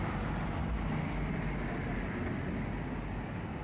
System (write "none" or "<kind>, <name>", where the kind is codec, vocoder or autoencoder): none